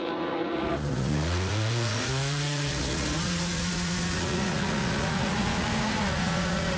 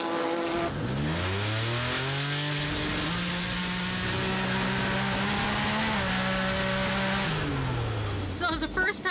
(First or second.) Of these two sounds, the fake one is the first